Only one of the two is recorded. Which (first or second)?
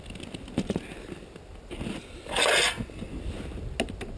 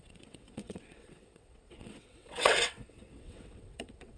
first